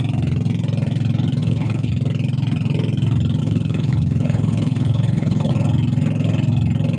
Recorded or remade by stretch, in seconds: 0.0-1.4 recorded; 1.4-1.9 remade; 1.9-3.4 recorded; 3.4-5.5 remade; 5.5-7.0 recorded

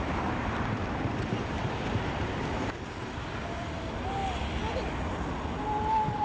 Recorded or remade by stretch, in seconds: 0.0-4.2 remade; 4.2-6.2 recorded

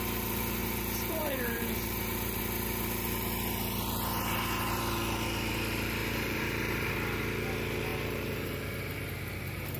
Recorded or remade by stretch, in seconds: 0.0-0.6 recorded; 0.6-2.4 remade; 2.4-6.0 recorded; 6.0-6.9 remade; 6.9-7.9 recorded; 7.9-8.9 remade; 8.9-9.8 recorded

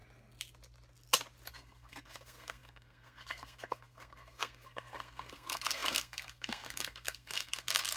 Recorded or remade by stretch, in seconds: 0.0-1.5 recorded; 1.5-8.0 remade

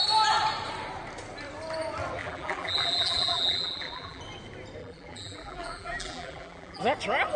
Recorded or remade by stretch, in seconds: 0.0-2.2 recorded; 2.2-4.2 remade; 4.2-4.8 recorded; 4.8-6.8 remade; 6.8-7.4 recorded

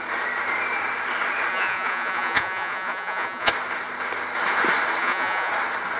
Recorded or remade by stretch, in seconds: 0.0-1.5 recorded; 1.5-3.5 remade; 3.5-5.0 recorded; 5.0-5.5 remade; 5.5-6.0 recorded

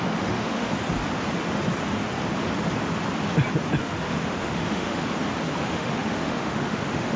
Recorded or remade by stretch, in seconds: 0.0-0.7 remade; 0.7-3.8 recorded; 3.8-5.1 remade; 5.1-5.6 recorded; 5.6-7.2 remade